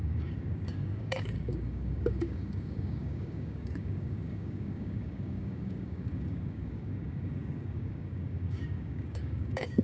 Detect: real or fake fake